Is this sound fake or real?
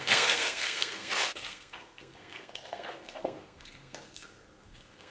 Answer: fake